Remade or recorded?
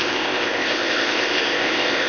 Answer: remade